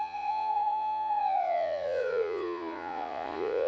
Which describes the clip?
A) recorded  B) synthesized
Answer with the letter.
B